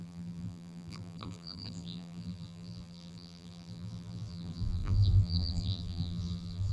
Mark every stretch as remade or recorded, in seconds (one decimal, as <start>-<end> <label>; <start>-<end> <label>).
0.0-6.7 remade